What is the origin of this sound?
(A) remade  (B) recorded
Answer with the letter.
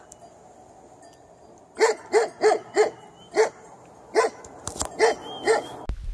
B